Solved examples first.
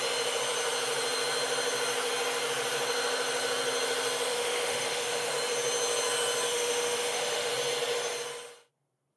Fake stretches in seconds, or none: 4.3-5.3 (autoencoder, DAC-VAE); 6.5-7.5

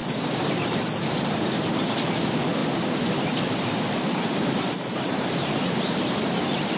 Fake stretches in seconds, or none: 0.0-1.3 (vocoder, BigVGAN v2); 2.6-6.8